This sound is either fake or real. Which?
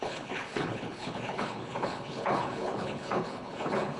fake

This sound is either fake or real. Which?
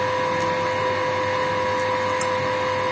real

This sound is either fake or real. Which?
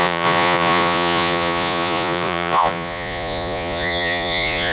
fake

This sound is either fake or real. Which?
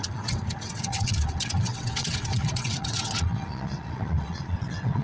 fake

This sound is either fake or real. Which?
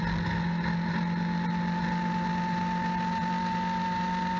real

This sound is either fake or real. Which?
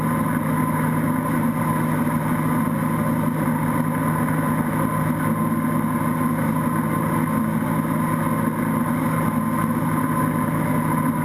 real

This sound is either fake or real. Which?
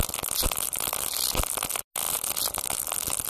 real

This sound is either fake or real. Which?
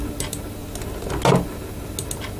real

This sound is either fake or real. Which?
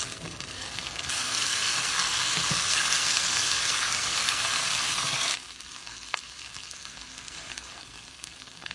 fake